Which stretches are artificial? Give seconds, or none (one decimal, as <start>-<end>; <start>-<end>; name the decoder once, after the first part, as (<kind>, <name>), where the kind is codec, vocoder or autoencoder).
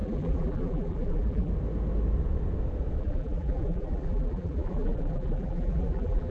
0.0-1.5 (vocoder, BigVGAN v2); 3.0-6.3